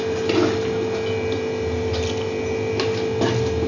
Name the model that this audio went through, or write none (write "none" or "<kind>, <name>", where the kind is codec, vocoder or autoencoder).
none